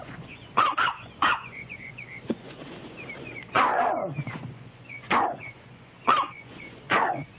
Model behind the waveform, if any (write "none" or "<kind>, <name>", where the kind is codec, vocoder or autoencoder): vocoder, Vocos